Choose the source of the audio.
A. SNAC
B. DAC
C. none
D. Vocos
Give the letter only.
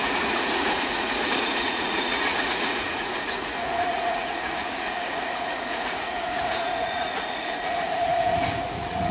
D